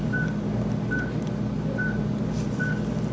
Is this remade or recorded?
recorded